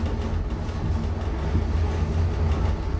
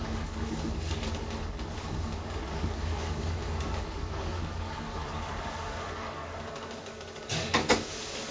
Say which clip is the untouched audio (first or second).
first